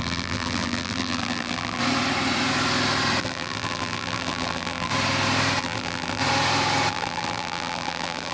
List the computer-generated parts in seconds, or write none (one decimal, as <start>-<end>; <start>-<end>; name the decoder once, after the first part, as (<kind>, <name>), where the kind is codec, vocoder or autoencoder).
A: 0.0-1.8 (vocoder, BigVGAN v2); 3.2-4.9; 5.6-6.2; 6.9-8.3

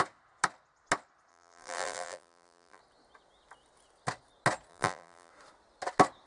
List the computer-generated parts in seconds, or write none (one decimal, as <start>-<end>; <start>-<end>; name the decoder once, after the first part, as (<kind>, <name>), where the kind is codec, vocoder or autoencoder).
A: 1.3-2.8 (vocoder, BigVGAN v2); 4.7-5.3

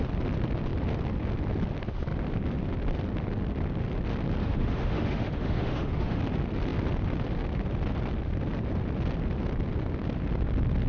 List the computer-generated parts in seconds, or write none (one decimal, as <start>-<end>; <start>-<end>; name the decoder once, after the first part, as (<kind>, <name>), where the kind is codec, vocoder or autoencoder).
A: 4.4-6.2 (autoencoder, DAC-VAE)

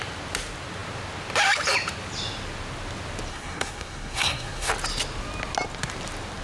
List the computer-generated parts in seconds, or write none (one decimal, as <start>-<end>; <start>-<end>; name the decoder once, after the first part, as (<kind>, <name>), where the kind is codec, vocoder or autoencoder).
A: 3.3-4.7 (codec, SNAC)

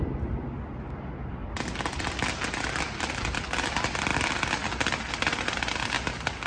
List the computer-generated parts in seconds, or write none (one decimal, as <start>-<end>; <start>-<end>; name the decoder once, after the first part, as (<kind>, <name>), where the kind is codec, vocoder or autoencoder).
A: none

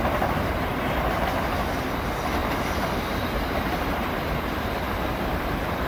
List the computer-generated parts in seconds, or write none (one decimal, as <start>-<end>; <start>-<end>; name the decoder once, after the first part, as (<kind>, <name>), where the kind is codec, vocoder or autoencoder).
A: 0.7-1.4 (vocoder, BigVGAN v2); 2.4-5.9

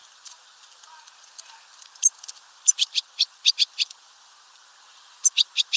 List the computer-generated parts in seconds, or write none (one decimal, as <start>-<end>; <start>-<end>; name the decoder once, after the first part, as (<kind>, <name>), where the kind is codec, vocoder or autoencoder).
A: none

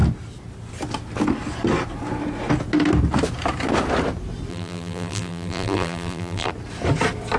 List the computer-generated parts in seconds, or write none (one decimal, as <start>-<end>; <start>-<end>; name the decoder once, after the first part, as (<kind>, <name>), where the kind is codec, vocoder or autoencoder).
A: 4.5-6.5 (vocoder, BigVGAN v2)